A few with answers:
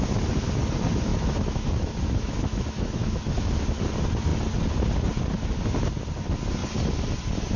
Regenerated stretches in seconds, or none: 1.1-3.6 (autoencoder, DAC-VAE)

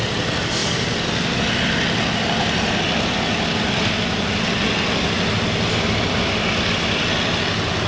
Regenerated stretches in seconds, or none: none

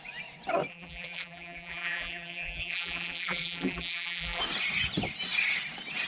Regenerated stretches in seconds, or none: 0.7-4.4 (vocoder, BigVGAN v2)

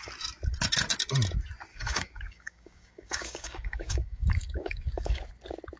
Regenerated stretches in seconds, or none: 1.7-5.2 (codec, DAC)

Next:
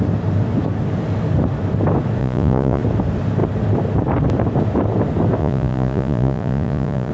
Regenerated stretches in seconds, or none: 2.2-2.8 (vocoder, Vocos); 5.4-7.1

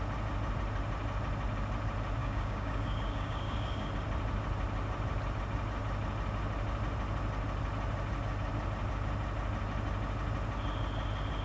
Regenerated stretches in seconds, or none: 2.2-3.9 (codec, DAC)

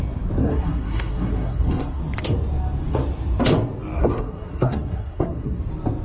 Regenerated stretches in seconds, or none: 0.4-2.0 (codec, SNAC); 4.0-5.6

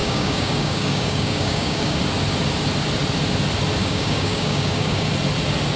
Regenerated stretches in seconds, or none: 0.0-2.0 (codec, DAC); 3.8-5.1